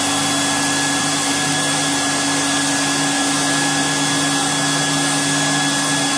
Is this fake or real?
real